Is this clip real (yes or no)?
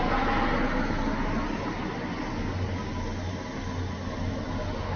yes